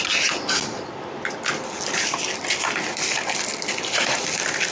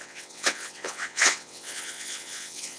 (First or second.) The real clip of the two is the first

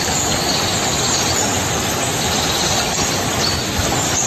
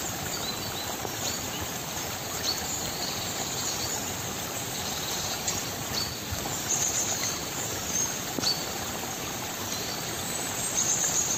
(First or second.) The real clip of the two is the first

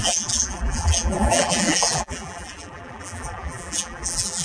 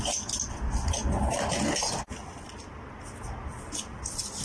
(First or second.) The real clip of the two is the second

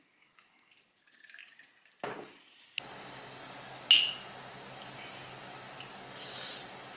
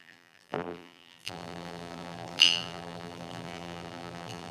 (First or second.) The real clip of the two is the first